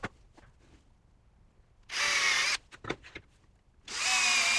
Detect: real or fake real